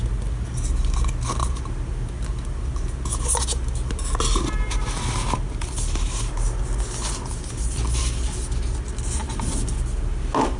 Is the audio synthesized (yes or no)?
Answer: no